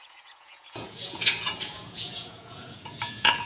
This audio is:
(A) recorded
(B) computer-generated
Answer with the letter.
B